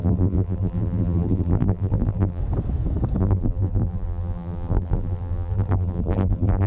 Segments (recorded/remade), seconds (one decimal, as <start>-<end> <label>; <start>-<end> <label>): 0.0-2.4 remade; 2.4-3.2 recorded; 3.2-6.7 remade